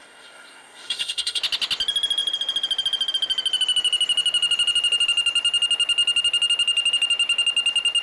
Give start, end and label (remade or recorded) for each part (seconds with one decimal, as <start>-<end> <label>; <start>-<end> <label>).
0.0-1.4 remade; 1.4-8.0 recorded